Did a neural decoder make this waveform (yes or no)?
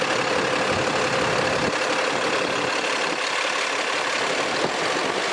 no